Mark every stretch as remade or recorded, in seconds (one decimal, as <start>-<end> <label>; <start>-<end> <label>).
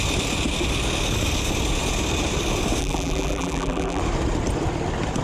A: 0.0-2.8 recorded; 2.8-4.0 remade; 4.0-5.2 recorded